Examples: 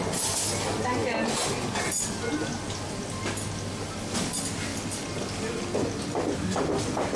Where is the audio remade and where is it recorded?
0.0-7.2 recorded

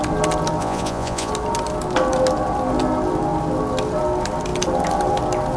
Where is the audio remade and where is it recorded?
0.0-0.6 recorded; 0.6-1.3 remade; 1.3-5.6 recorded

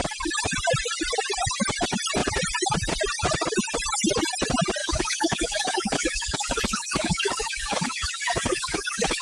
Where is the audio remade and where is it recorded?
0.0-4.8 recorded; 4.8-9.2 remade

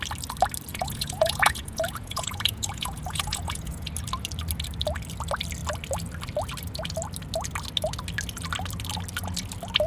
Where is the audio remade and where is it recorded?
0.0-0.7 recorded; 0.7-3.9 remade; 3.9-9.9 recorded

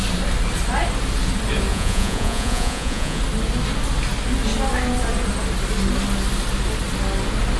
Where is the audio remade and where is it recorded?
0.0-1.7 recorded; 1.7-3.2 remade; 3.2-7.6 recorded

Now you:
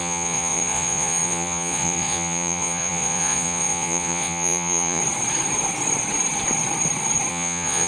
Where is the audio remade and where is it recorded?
0.0-5.0 remade; 5.0-7.3 recorded; 7.3-7.9 remade

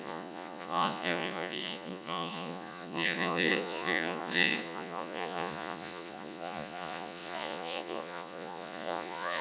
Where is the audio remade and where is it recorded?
0.0-9.4 remade

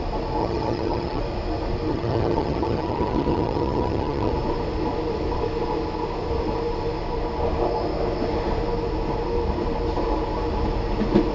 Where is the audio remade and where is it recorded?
0.0-0.4 recorded; 0.4-1.2 remade; 1.2-1.9 recorded; 1.9-4.3 remade; 4.3-11.3 recorded